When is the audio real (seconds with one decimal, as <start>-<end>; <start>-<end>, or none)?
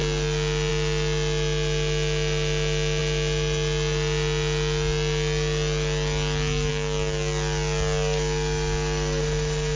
0.0-9.8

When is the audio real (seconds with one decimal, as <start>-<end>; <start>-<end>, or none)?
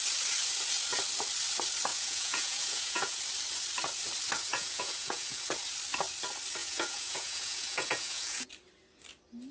0.0-1.9; 3.2-4.5; 5.4-6.6; 8.5-9.5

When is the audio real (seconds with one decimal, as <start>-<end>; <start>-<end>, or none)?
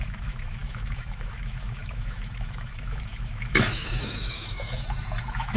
none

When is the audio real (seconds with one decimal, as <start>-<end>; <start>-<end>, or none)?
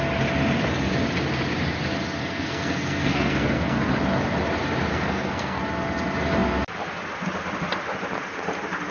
0.0-2.2; 3.9-4.9; 5.6-8.9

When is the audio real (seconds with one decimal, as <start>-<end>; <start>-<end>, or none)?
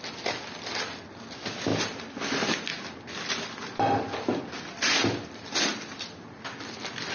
0.0-7.1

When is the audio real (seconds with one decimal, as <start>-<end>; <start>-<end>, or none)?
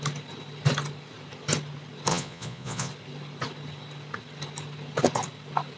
0.0-2.1; 2.9-5.8